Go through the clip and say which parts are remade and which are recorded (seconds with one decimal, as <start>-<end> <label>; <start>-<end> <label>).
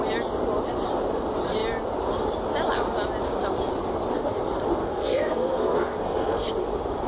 0.0-4.8 recorded; 4.8-6.5 remade; 6.5-7.1 recorded